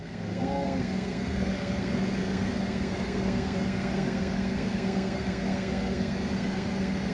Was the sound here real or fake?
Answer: fake